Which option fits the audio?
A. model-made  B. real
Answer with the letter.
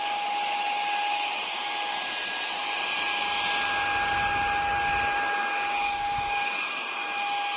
B